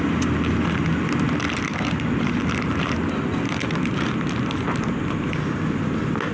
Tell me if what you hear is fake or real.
real